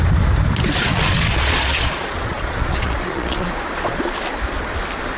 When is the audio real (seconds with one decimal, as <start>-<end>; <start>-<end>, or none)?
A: 0.0-0.9; 4.0-5.2